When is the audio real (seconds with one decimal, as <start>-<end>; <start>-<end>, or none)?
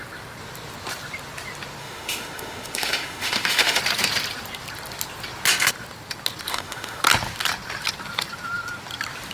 0.0-1.8; 3.8-6.5; 7.0-9.3